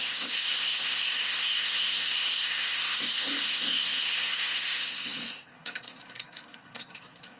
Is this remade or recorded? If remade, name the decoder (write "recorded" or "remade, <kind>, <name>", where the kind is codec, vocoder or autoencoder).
remade, codec, SNAC